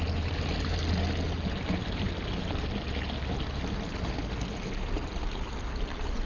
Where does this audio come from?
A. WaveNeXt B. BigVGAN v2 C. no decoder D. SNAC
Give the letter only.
C